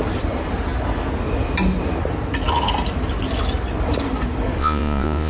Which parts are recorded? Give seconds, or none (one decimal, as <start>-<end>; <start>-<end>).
0.0-4.6